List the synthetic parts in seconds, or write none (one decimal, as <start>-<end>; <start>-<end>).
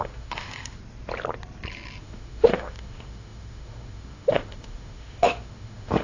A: 0.0-0.8; 2.0-6.0